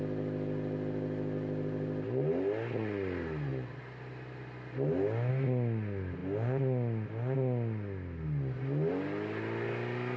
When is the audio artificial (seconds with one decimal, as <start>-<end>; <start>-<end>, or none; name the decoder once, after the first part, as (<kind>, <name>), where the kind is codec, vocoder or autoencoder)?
none